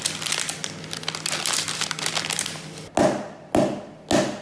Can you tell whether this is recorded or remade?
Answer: recorded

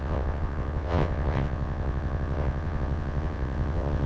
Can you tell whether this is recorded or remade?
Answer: remade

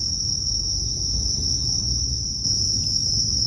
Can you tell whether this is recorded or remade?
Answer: recorded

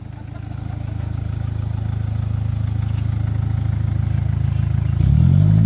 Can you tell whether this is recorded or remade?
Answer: recorded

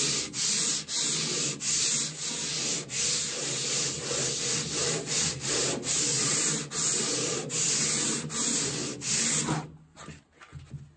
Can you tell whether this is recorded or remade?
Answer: recorded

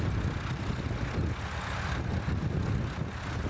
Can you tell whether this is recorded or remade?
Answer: recorded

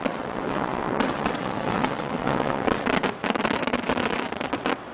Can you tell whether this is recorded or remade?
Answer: remade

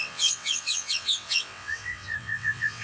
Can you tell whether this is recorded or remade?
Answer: remade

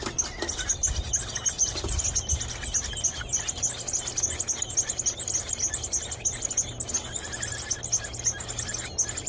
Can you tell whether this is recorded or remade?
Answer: recorded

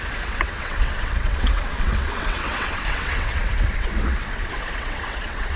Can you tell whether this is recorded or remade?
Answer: remade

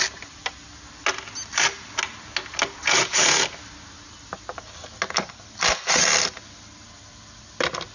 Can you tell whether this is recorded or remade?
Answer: recorded